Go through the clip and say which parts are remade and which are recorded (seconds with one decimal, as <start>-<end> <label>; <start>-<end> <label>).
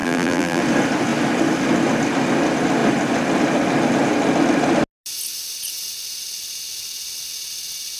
0.0-0.6 remade; 0.6-8.0 recorded